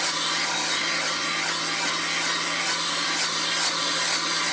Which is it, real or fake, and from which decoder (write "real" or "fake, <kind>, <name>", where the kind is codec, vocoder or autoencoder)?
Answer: real